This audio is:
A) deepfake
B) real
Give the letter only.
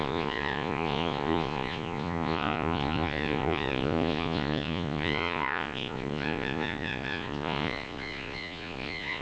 A